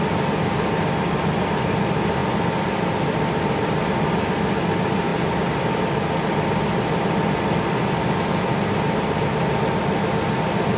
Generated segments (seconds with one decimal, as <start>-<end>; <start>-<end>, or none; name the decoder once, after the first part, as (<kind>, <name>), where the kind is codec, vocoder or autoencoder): none